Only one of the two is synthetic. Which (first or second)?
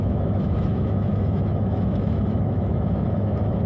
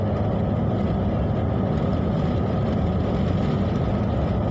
first